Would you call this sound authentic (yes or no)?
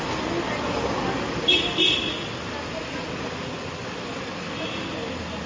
yes